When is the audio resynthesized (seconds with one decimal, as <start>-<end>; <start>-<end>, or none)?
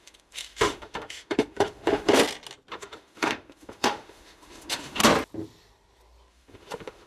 0.0-2.2; 2.7-5.0; 6.3-7.1